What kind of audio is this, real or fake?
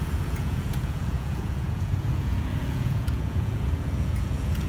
fake